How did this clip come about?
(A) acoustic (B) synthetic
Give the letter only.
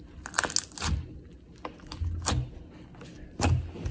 A